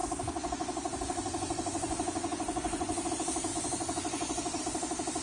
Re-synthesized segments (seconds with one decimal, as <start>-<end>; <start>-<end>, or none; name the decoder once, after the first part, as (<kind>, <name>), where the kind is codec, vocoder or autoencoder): 0.0-3.1 (vocoder, Vocos); 3.5-4.6